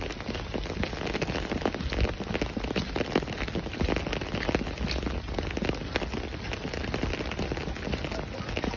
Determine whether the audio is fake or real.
real